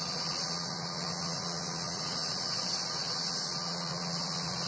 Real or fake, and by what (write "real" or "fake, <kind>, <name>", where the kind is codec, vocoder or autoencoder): fake, vocoder, Vocos